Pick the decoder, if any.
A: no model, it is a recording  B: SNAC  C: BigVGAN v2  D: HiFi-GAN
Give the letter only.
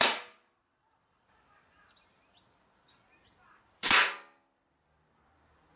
C